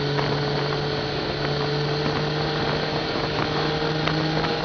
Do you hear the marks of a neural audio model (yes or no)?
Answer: no